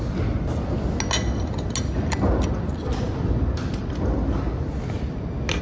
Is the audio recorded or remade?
recorded